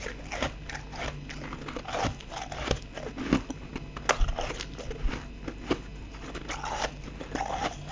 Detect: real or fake real